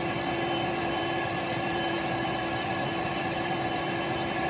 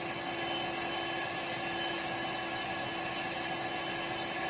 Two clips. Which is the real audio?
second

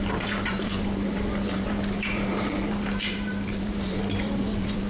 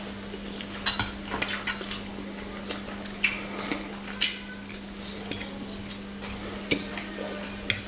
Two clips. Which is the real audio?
second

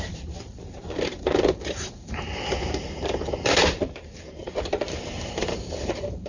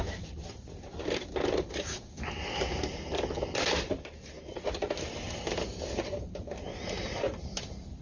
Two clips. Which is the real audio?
second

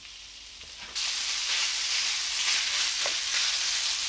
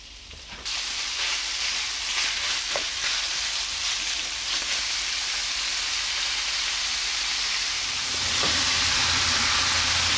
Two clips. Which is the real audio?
first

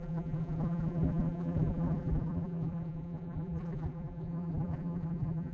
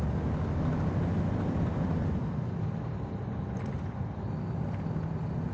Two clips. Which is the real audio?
second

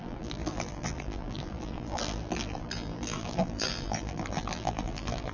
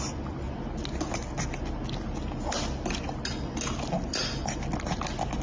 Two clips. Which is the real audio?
second